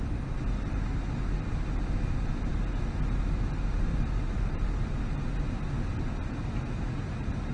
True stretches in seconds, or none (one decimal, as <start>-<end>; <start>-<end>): 0.0-3.9; 4.6-7.5